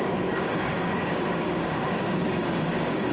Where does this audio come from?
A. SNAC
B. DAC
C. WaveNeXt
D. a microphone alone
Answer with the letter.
B